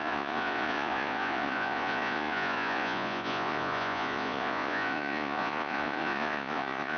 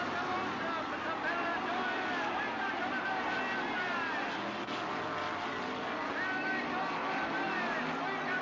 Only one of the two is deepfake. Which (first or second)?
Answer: first